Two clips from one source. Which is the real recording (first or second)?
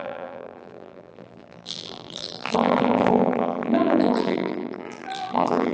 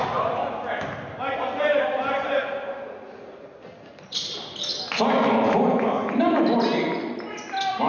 second